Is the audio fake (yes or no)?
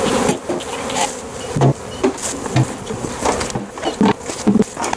no